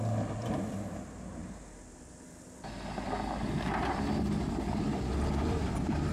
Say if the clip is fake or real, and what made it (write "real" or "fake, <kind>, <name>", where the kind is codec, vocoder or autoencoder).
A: real